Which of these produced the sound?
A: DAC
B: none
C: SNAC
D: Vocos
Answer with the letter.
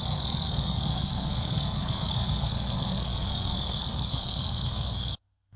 C